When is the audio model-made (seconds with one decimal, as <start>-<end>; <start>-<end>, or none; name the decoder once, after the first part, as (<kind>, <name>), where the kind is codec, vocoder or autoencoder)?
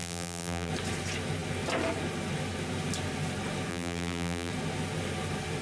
0.0-0.7 (vocoder, BigVGAN v2); 3.7-4.5